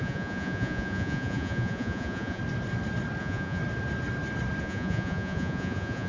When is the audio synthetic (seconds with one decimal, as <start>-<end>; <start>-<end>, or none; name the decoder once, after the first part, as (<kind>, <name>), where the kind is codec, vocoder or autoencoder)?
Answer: 0.0-2.4 (vocoder, Vocos); 3.2-3.6; 4.6-6.1

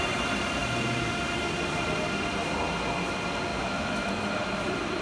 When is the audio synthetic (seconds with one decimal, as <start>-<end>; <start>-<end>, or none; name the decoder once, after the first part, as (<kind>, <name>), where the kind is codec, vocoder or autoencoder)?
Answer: 3.5-4.4 (autoencoder, DAC-VAE)

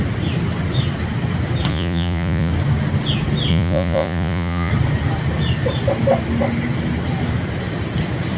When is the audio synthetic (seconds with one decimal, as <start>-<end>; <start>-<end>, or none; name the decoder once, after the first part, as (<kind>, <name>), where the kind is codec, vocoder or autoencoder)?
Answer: 1.7-2.5 (vocoder, Vocos); 3.5-4.7

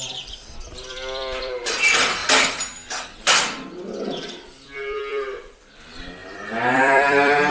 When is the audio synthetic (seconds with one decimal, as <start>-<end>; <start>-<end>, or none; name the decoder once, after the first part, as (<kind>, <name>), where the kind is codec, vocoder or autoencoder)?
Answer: 0.0-2.2 (vocoder, BigVGAN v2); 3.8-7.5

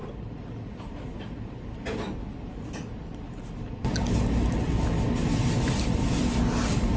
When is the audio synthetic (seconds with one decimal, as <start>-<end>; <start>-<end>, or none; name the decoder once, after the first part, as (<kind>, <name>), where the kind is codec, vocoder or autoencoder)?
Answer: none

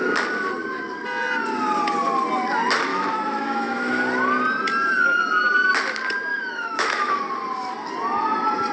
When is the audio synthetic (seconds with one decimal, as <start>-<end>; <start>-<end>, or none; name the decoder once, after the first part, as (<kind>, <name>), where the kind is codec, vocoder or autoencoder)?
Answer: 2.9-3.9 (autoencoder, DAC-VAE); 6.3-7.2